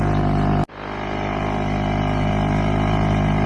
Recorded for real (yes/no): yes